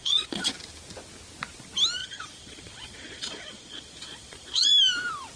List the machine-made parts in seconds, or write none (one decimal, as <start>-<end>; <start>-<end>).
0.0-0.5; 2.0-4.7

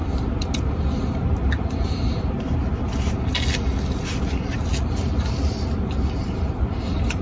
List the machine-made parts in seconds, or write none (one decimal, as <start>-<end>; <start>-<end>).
0.0-2.6; 6.3-7.2